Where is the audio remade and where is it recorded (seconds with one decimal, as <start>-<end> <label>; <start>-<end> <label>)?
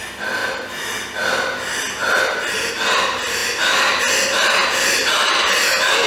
0.0-6.1 recorded